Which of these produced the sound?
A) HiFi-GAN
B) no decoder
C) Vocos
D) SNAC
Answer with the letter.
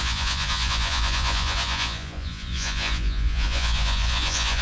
C